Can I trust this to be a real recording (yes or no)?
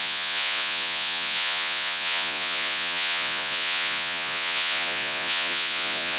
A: no